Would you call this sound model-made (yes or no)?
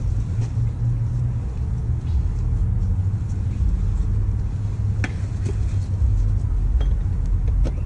no